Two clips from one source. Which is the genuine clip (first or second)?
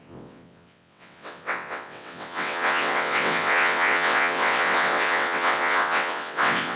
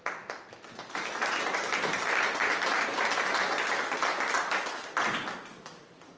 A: second